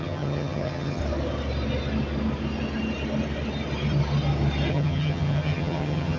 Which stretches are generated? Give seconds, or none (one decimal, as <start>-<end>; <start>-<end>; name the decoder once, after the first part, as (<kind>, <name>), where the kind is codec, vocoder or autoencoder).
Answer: 0.0-1.0 (vocoder, HiFi-GAN); 4.7-6.2